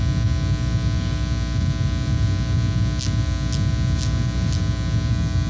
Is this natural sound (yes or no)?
yes